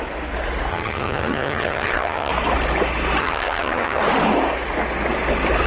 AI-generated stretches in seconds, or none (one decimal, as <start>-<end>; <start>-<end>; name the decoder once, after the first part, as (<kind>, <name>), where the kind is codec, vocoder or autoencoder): 0.7-2.3 (vocoder, HiFi-GAN); 3.2-4.0